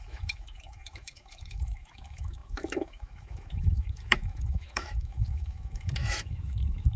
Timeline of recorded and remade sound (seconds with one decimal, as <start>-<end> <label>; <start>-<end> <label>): 0.0-7.0 remade